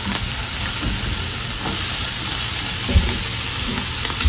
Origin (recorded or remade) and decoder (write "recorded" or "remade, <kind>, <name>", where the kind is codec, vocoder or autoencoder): recorded